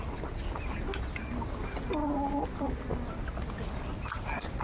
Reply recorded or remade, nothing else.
recorded